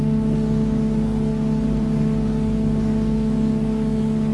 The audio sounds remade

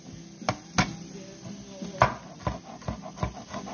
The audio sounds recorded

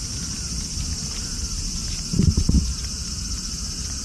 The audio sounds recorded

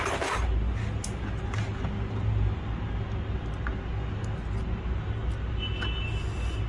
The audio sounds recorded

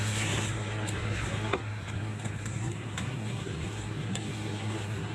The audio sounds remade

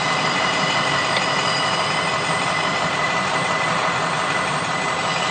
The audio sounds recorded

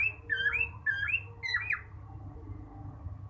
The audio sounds recorded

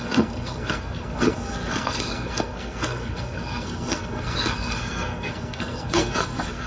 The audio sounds remade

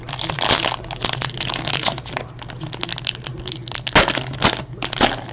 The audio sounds recorded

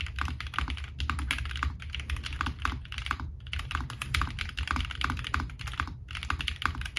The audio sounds recorded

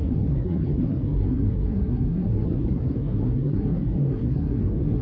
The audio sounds remade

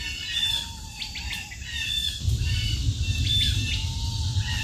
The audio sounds recorded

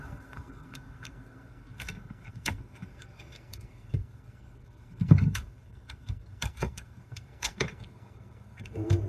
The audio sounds remade